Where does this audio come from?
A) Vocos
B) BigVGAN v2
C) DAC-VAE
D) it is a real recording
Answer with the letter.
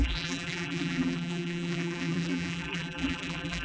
B